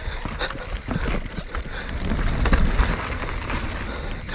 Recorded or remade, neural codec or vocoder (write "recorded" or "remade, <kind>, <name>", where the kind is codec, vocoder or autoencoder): recorded